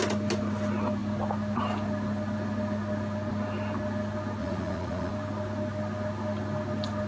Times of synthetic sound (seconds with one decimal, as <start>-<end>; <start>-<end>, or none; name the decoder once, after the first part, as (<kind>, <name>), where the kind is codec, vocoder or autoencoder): 4.4-5.1 (vocoder, Vocos)